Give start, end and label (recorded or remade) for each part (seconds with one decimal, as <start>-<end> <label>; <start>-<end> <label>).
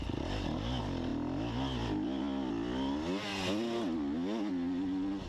0.0-5.3 recorded